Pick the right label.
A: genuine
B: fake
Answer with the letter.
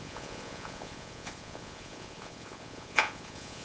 B